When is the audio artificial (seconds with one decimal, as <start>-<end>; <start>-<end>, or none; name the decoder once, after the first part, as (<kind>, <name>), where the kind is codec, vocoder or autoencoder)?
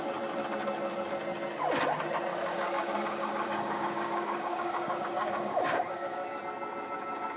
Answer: 2.3-6.4 (codec, DAC)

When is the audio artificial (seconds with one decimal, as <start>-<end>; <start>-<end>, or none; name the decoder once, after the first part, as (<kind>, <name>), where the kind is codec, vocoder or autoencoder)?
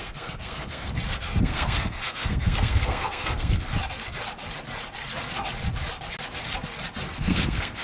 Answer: 0.0-0.9 (codec, SNAC); 1.4-3.7; 7.2-7.8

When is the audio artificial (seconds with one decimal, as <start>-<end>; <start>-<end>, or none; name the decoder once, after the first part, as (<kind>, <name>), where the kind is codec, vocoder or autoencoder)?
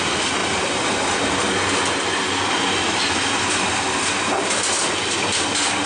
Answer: none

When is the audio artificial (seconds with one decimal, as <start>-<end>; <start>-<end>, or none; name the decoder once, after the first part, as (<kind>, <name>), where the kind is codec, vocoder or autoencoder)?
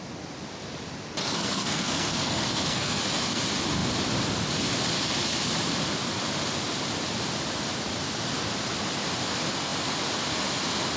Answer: 1.2-3.4 (codec, SNAC)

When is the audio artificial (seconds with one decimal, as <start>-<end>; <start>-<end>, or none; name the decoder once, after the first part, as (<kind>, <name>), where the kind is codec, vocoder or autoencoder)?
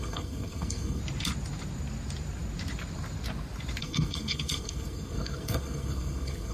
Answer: 0.0-1.0 (codec, SNAC); 3.8-6.5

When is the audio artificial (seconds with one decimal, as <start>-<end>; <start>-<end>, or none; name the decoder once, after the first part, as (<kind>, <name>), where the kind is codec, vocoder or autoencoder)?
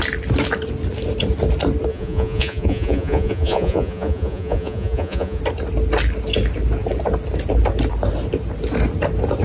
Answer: 1.9-5.4 (vocoder, Vocos)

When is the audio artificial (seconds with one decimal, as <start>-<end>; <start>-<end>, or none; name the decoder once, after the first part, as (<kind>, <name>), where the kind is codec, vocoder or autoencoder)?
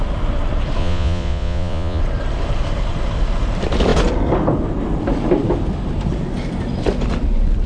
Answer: 0.8-2.0 (vocoder, Vocos)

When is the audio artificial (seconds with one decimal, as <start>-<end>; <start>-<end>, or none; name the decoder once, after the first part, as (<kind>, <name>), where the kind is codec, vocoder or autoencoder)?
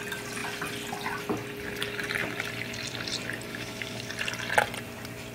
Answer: 3.5-4.1 (codec, DAC)